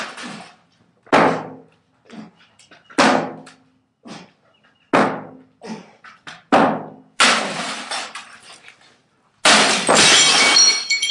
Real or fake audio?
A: real